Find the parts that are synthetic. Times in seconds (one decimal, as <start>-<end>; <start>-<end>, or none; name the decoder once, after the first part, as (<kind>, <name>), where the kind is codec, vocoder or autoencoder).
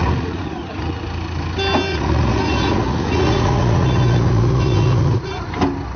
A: 0.0-1.0 (vocoder, Vocos); 1.9-5.5